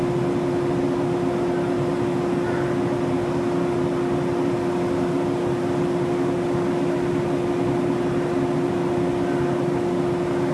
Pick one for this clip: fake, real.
real